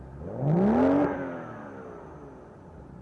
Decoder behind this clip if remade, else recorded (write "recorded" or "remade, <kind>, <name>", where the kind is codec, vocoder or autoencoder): recorded